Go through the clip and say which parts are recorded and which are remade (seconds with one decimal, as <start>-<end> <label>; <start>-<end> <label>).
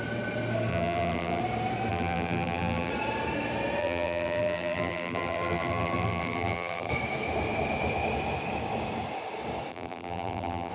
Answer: 0.0-0.7 recorded; 0.7-1.4 remade; 1.4-1.9 recorded; 1.9-2.9 remade; 2.9-3.8 recorded; 3.8-6.9 remade; 6.9-9.7 recorded; 9.7-10.7 remade